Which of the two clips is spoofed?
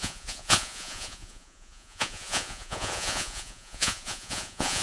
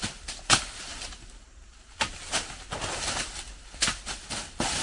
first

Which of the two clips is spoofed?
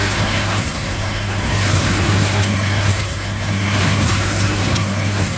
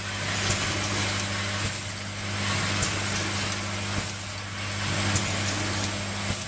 first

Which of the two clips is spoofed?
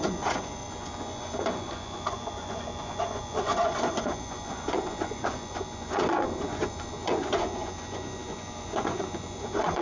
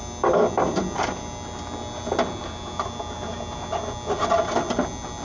first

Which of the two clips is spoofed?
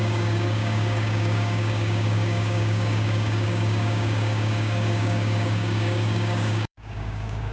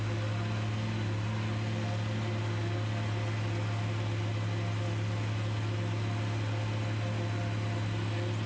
first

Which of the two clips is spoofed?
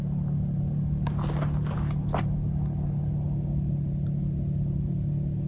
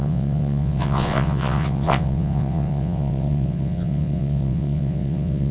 second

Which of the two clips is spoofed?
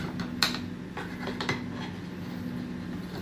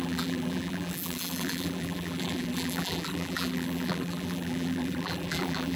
second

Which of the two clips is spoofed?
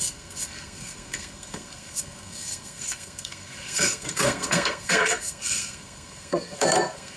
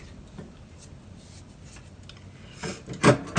first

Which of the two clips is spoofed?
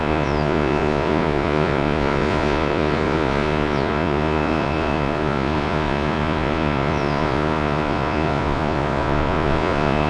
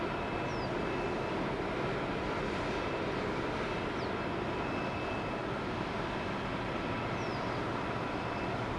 first